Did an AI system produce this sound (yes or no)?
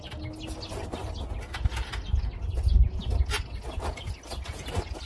no